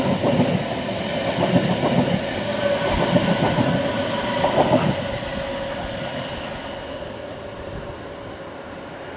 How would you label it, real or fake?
real